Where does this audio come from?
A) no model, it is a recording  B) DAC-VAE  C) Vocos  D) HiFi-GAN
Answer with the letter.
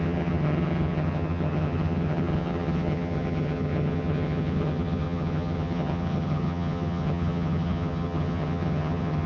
D